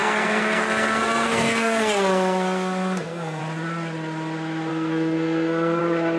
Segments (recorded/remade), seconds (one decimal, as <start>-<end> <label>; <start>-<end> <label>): 0.0-3.4 remade; 3.4-4.7 recorded; 4.7-5.8 remade; 5.8-6.2 recorded